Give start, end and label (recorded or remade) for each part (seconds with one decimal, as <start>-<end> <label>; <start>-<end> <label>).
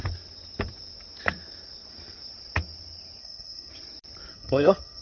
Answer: 0.0-3.2 recorded; 3.2-3.7 remade; 3.7-4.3 recorded; 4.3-5.0 remade